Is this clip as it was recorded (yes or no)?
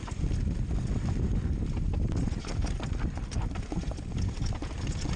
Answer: yes